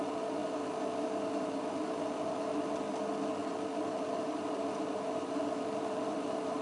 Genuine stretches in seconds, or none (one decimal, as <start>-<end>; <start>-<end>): 0.0-3.4